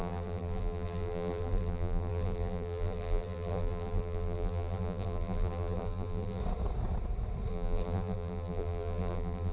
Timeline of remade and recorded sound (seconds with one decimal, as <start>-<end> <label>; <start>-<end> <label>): 0.0-6.4 remade; 6.4-7.5 recorded; 7.5-9.5 remade